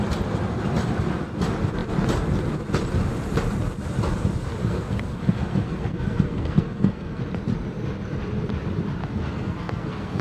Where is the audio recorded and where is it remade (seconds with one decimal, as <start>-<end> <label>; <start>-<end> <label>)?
0.0-4.6 recorded; 4.6-7.2 remade; 7.2-9.0 recorded; 9.0-10.2 remade